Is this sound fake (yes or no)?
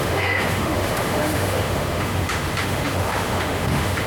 yes